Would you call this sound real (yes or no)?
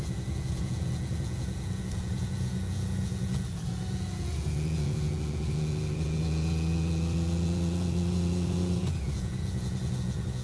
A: no